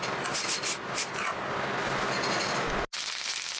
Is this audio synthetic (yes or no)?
no